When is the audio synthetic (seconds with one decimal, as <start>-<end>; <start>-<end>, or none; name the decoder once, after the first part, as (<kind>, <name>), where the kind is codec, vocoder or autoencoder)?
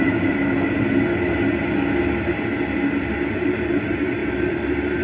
0.0-0.4 (vocoder, BigVGAN v2); 3.4-5.0